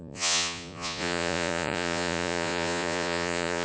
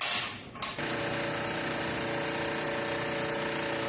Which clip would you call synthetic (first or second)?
first